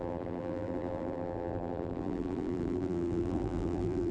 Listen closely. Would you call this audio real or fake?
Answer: fake